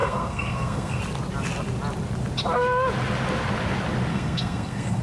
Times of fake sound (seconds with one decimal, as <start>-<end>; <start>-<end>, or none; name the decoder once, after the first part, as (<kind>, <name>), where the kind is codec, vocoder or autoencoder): 0.0-1.0 (codec, SNAC); 4.1-5.0